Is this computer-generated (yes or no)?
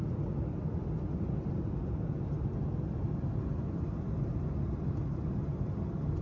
no